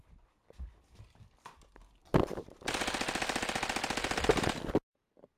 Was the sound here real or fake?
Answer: real